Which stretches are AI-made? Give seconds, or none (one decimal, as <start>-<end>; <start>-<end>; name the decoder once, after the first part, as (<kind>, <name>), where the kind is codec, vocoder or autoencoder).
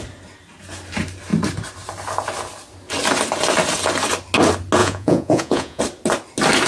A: 4.8-5.8 (vocoder, Vocos)